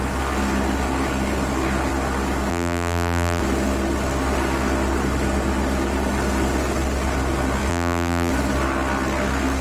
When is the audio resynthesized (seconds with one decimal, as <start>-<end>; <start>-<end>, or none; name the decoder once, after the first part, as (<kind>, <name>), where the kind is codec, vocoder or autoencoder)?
2.5-3.4 (vocoder, BigVGAN v2); 7.7-8.3